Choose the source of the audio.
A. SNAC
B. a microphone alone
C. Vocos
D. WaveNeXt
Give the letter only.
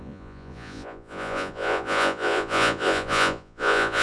C